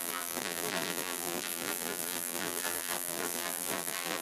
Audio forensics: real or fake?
fake